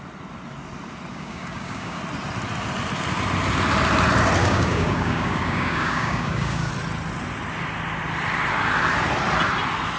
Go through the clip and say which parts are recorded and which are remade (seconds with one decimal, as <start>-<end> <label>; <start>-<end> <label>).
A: 0.0-1.1 recorded; 1.1-2.0 remade; 2.0-4.4 recorded; 4.4-6.7 remade; 6.7-10.0 recorded